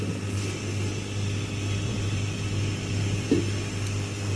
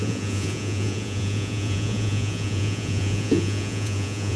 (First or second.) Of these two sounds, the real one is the first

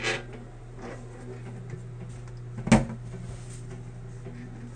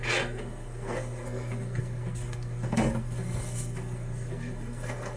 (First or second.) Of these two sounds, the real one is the first